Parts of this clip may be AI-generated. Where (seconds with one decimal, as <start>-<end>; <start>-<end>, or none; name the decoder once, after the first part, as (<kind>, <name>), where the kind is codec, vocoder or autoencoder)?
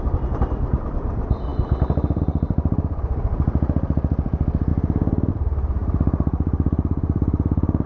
0.0-4.7 (vocoder, BigVGAN v2); 5.3-5.8; 6.3-7.9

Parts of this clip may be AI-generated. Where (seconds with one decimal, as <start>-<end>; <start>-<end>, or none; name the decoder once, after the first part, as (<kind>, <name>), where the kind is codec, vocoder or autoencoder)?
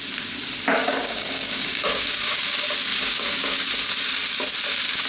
0.8-2.4 (codec, DAC); 2.9-3.7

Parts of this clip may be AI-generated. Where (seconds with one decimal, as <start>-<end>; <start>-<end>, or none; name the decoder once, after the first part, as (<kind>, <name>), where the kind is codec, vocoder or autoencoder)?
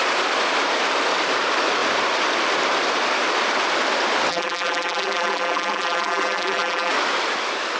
4.3-6.9 (vocoder, BigVGAN v2)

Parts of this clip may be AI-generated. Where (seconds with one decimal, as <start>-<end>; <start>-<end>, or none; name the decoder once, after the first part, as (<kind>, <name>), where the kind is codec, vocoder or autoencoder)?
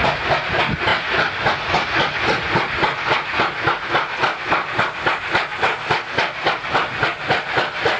0.9-1.9 (vocoder, BigVGAN v2)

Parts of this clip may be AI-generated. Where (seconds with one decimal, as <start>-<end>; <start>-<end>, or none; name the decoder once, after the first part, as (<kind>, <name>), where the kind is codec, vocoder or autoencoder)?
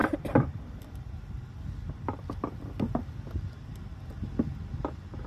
0.0-3.2 (vocoder, BigVGAN v2)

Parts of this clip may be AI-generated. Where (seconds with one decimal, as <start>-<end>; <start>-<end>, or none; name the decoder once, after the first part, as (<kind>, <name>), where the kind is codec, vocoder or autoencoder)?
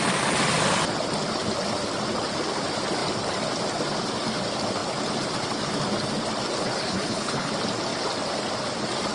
6.6-7.5 (codec, HILCodec)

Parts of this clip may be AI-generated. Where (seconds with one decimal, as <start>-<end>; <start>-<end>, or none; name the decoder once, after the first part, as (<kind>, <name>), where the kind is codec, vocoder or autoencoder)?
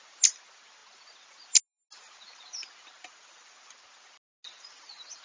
none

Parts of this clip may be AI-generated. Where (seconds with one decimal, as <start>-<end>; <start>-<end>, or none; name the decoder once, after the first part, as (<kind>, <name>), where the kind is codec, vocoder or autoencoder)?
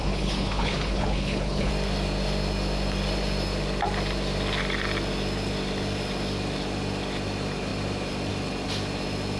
0.0-1.7 (codec, HILCodec)